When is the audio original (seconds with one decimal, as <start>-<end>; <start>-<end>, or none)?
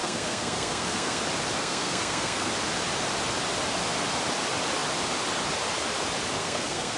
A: 1.2-1.6; 2.5-6.4